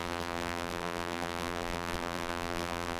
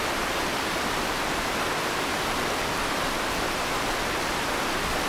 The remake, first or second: first